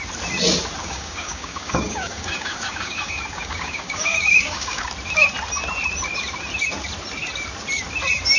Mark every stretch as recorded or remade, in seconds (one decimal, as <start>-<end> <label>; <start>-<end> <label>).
0.0-0.8 recorded; 0.8-4.9 remade; 4.9-8.4 recorded